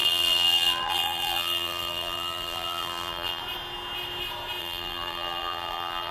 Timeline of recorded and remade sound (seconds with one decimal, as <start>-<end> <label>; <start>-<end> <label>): 0.0-3.4 remade; 3.4-4.6 recorded; 4.6-6.1 remade